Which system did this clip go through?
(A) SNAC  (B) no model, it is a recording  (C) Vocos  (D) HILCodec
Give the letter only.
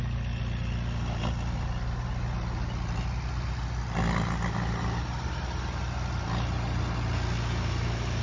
B